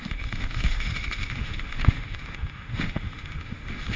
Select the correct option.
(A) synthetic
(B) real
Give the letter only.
A